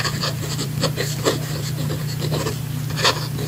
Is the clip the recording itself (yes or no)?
no